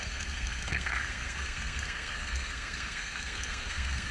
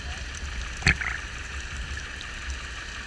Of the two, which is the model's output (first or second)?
first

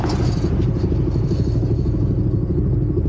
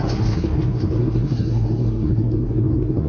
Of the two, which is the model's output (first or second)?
second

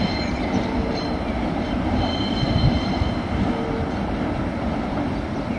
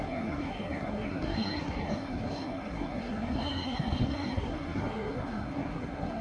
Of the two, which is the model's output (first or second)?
second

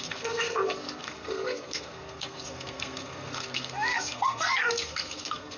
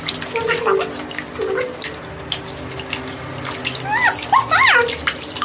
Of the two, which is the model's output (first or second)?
first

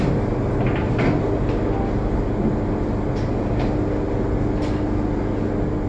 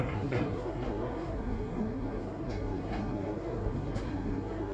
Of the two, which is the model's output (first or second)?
second